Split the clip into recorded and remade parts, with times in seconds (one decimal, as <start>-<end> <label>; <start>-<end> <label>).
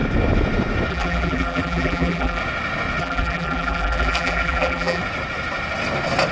0.0-0.9 recorded; 0.9-2.4 remade; 2.4-3.0 recorded; 3.0-5.0 remade; 5.0-6.3 recorded